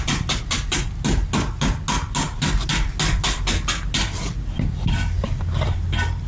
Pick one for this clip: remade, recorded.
recorded